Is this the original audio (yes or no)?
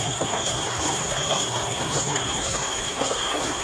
no